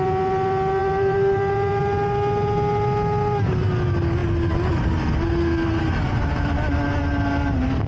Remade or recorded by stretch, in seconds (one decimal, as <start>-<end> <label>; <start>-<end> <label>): 0.0-7.9 recorded